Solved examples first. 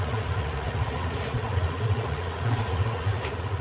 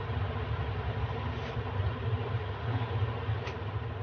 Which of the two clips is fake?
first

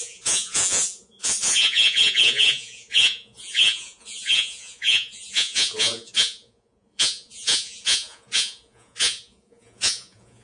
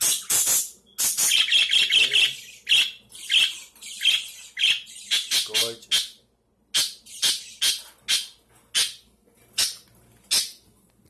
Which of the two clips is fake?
first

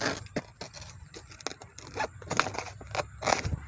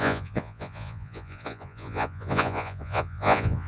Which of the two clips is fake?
second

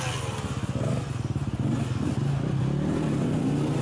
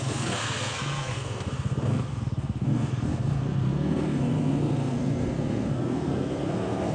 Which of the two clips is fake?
second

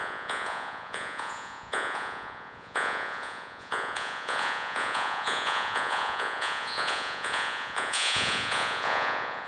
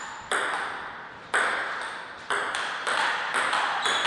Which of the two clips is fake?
first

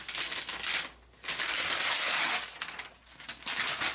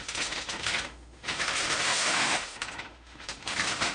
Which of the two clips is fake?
second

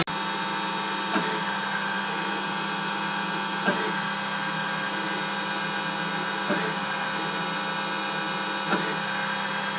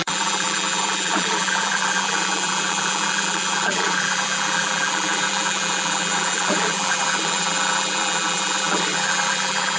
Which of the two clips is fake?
second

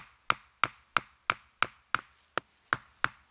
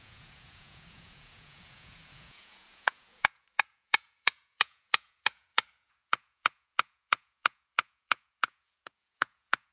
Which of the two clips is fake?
second